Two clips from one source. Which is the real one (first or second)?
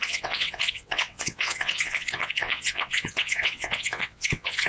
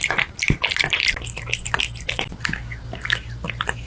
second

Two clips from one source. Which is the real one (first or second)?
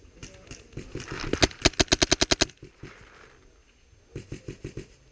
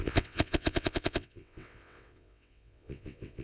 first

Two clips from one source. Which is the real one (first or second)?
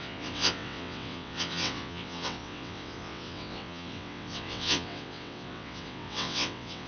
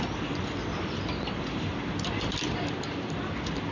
second